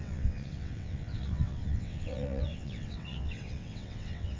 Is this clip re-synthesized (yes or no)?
yes